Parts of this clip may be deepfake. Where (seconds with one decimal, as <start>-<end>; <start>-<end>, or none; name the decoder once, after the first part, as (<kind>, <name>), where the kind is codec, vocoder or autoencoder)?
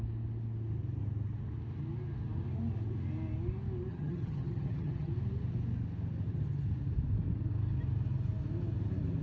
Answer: 3.9-5.1 (vocoder, HiFi-GAN)